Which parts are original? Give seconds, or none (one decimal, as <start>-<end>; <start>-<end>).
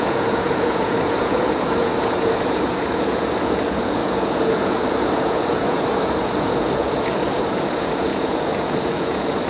none